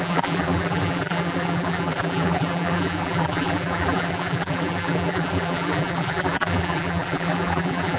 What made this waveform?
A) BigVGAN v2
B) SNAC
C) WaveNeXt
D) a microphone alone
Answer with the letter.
A